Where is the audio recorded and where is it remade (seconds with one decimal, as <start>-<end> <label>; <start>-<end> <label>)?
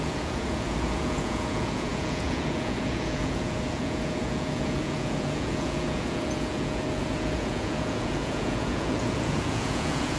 0.0-10.2 remade